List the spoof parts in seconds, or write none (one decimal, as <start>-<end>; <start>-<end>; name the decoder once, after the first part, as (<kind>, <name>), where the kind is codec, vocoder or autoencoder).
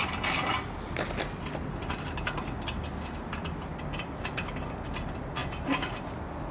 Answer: none